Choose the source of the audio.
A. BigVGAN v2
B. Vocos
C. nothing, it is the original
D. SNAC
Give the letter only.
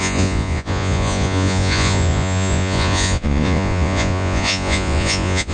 B